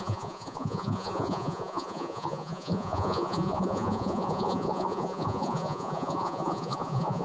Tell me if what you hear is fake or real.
fake